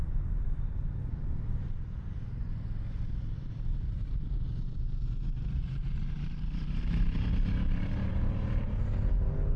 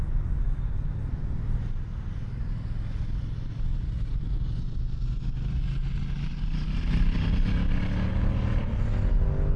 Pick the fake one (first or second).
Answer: first